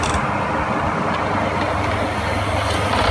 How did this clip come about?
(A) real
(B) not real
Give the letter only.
A